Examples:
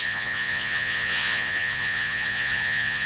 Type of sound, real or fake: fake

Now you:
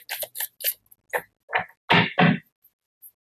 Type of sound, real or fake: real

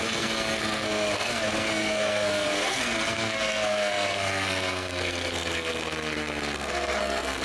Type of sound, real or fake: fake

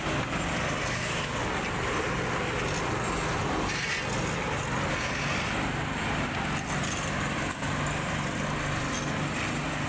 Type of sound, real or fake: real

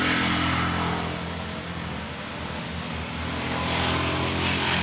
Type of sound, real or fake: real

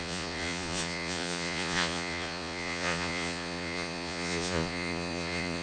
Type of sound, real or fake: fake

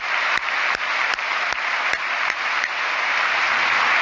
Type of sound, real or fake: real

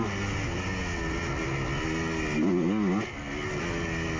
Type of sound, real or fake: real